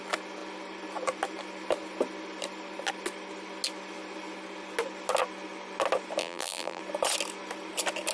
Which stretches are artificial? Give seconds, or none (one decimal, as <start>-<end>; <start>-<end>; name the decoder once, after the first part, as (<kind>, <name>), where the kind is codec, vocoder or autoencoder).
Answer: 6.2-6.8 (vocoder, BigVGAN v2)

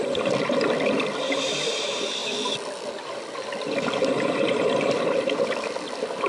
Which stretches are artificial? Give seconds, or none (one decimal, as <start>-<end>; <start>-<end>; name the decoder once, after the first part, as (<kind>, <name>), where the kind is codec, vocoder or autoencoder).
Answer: 0.0-2.2 (vocoder, BigVGAN v2); 3.0-6.3

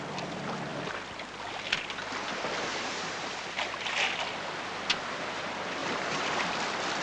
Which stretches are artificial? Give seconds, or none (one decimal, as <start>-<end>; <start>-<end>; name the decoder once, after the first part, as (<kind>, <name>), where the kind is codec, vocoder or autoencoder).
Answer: 2.7-3.3 (vocoder, BigVGAN v2); 5.8-6.5

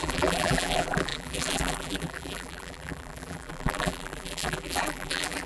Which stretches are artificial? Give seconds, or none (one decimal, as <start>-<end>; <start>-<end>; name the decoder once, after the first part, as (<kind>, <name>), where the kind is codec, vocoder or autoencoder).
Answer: 0.0-5.5 (vocoder, BigVGAN v2)

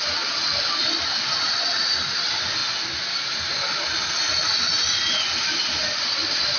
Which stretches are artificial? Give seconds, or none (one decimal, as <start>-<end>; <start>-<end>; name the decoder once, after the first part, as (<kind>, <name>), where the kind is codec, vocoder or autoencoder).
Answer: 0.0-6.6 (vocoder, BigVGAN v2)

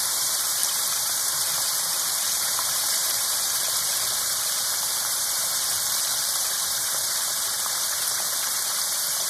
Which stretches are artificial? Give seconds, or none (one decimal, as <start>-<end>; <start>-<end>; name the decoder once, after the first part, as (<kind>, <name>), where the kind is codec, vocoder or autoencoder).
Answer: 0.0-5.7 (vocoder, BigVGAN v2); 6.3-9.3

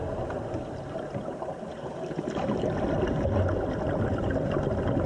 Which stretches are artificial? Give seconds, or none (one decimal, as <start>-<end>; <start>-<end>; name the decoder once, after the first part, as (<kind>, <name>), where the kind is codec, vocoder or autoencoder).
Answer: 1.2-4.3 (vocoder, BigVGAN v2)

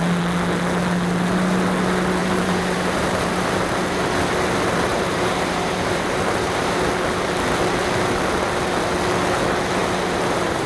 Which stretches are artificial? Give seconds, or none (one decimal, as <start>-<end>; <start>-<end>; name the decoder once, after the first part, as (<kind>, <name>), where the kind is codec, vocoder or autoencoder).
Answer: 2.2-3.3 (vocoder, BigVGAN v2); 4.9-6.8; 9.8-10.7